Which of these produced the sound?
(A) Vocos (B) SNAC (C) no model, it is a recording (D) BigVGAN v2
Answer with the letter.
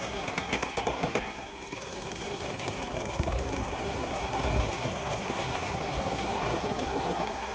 B